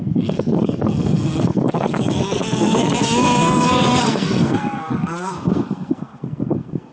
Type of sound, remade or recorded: remade